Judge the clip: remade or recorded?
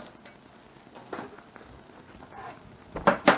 recorded